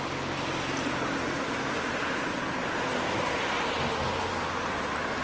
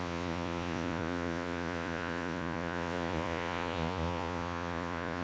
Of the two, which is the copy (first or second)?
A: second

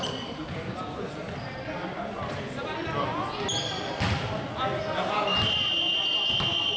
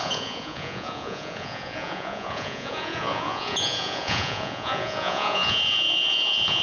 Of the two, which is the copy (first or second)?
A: second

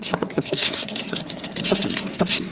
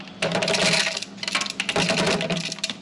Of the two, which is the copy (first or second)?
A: first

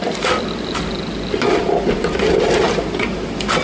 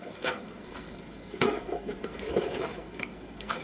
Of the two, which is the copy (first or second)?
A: second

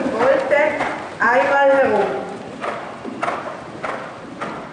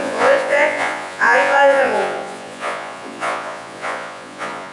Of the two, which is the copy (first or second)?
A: second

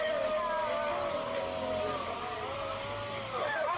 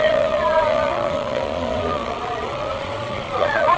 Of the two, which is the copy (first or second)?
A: second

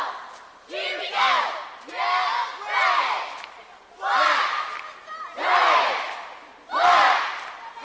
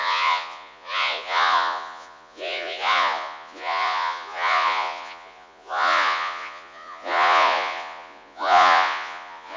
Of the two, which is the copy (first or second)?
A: second